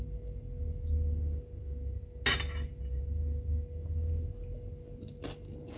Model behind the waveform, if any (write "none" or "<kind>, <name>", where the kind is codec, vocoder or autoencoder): none